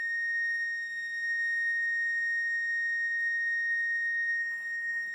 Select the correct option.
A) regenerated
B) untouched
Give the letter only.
A